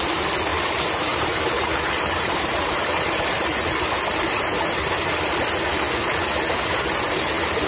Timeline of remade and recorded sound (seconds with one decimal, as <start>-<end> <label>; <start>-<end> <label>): 0.0-0.5 recorded; 0.5-4.0 remade; 4.0-7.7 recorded